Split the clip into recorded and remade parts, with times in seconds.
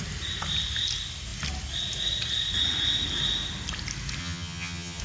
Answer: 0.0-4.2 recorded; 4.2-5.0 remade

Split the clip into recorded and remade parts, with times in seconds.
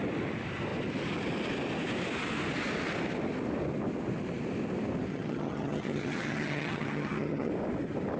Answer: 0.0-5.1 recorded; 5.1-7.5 remade; 7.5-8.2 recorded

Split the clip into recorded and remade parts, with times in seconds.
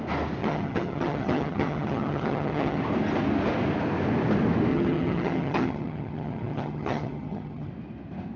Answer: 0.0-0.4 recorded; 0.4-2.8 remade; 2.8-4.7 recorded; 4.7-7.7 remade; 7.7-8.4 recorded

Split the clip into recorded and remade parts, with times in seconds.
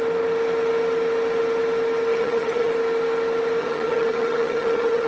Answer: 0.0-2.1 recorded; 2.1-2.7 remade; 2.7-3.6 recorded; 3.6-5.1 remade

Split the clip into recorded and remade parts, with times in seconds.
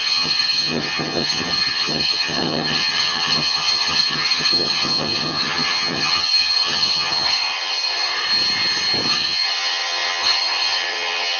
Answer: 0.0-8.1 remade; 8.1-9.1 recorded; 9.1-11.4 remade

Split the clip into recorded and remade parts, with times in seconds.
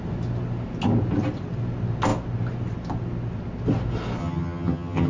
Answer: 0.0-4.2 recorded; 4.2-5.1 remade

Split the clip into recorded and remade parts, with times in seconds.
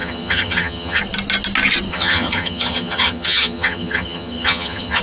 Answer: 0.0-1.0 remade; 1.0-1.9 recorded; 1.9-5.0 remade